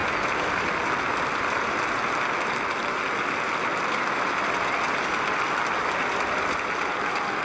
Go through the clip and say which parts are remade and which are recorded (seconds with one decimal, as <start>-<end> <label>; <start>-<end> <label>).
0.0-7.4 recorded